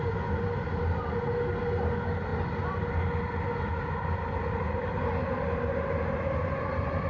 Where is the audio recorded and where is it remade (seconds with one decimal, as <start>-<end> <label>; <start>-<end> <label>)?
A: 0.0-7.1 recorded